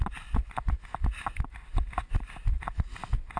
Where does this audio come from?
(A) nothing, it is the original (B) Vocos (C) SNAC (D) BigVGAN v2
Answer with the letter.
A